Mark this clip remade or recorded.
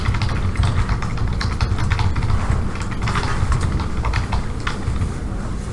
recorded